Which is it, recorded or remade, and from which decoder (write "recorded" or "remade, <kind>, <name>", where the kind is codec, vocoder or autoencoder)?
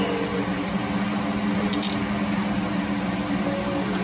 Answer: recorded